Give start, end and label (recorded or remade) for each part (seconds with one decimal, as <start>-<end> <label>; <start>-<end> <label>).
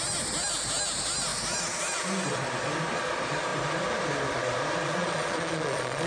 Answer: 0.0-5.0 recorded; 5.0-6.1 remade